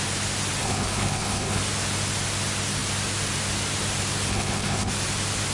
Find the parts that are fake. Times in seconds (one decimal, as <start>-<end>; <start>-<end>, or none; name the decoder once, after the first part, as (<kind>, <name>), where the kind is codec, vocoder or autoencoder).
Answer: 0.6-1.6 (codec, HILCodec); 4.3-4.9